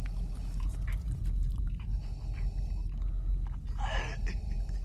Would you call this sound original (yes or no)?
yes